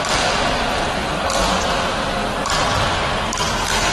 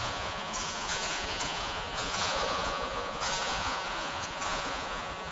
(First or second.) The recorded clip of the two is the first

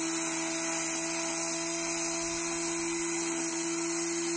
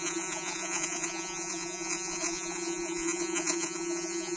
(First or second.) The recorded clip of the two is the first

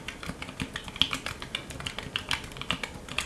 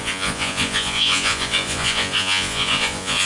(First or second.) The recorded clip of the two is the first